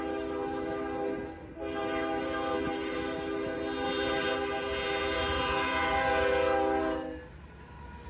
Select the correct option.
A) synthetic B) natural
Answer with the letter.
B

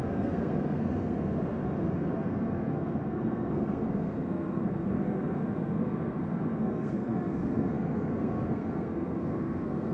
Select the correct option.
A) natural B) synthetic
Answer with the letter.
B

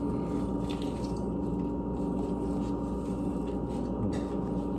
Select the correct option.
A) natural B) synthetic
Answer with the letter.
A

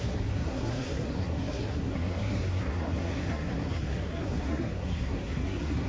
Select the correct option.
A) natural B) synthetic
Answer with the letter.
B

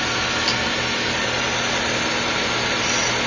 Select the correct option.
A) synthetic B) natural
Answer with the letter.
B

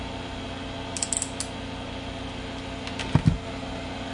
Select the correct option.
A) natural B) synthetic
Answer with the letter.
A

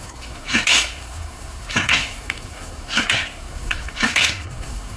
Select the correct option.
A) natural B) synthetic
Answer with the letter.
B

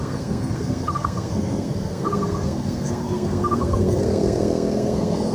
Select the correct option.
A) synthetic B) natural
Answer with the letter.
A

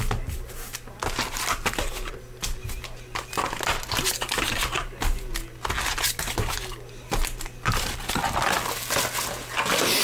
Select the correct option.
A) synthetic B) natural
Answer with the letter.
B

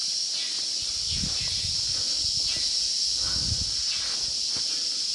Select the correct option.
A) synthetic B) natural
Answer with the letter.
B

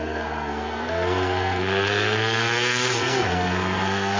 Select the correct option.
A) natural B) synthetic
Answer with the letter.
B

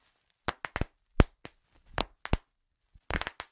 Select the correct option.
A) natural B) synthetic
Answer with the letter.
A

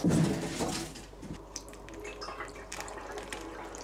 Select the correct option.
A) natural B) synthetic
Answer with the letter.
A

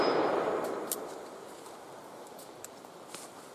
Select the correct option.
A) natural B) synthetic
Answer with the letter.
A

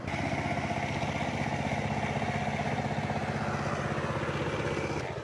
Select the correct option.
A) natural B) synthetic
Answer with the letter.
A